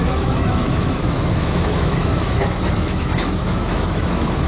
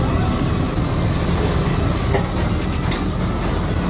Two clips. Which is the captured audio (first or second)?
second